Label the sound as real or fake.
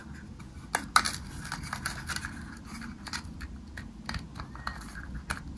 real